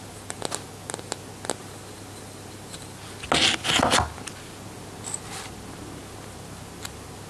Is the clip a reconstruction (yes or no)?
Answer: no